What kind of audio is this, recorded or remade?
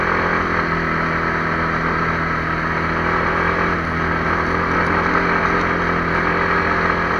recorded